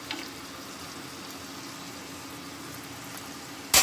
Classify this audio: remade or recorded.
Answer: recorded